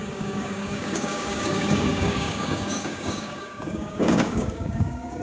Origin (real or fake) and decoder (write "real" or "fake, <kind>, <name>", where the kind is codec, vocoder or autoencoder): fake, codec, DAC